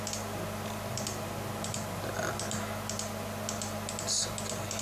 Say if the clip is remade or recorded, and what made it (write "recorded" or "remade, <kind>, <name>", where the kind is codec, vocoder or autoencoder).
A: recorded